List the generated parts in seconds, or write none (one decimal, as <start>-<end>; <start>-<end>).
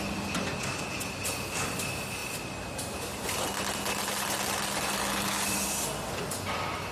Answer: none